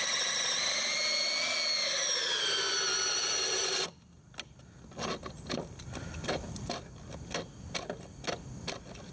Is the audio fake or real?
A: real